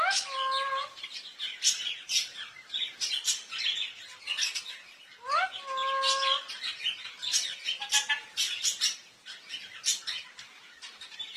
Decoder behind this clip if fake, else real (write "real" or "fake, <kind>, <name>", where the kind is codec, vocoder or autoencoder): real